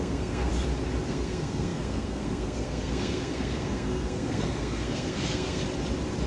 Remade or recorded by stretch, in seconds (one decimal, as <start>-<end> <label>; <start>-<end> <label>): 0.0-0.5 remade; 0.5-1.1 recorded; 1.1-5.6 remade; 5.6-6.3 recorded